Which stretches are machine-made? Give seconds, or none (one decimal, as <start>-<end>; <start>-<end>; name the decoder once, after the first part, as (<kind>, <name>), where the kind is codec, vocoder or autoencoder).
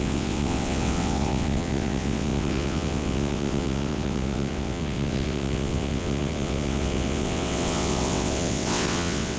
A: 0.0-9.4 (vocoder, WaveNeXt)